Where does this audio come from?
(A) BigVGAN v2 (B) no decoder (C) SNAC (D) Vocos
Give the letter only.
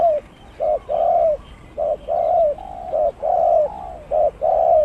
B